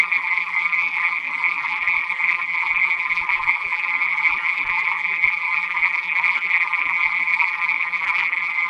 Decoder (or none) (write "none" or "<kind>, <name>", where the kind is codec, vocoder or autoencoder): vocoder, BigVGAN v2